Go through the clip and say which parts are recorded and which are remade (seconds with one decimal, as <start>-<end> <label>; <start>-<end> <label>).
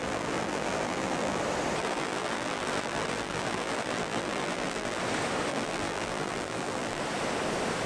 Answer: 0.0-1.4 remade; 1.4-1.8 recorded; 1.8-5.0 remade; 5.0-5.5 recorded; 5.5-7.0 remade; 7.0-7.9 recorded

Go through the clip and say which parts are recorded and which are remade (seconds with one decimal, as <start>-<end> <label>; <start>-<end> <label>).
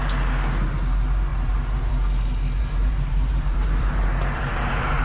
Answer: 0.0-1.3 recorded; 1.3-1.9 remade; 1.9-2.6 recorded; 2.6-5.0 remade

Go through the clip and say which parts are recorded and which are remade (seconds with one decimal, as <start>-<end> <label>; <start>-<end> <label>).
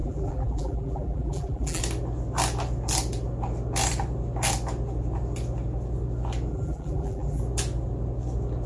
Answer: 0.0-1.8 remade; 1.8-6.5 recorded; 6.5-7.4 remade; 7.4-8.7 recorded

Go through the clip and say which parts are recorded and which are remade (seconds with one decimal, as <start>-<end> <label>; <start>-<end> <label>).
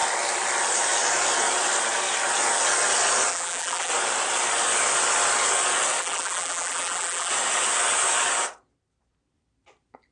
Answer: 0.0-3.3 recorded; 3.3-3.9 remade; 3.9-6.0 recorded; 6.0-7.3 remade; 7.3-10.1 recorded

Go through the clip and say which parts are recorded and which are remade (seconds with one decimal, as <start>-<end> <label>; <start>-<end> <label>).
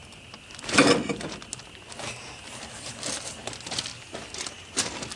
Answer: 0.0-5.2 recorded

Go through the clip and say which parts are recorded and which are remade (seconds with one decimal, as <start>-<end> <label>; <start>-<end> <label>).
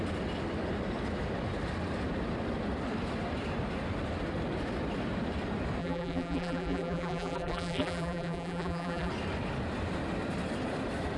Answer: 0.0-5.8 recorded; 5.8-9.1 remade; 9.1-11.2 recorded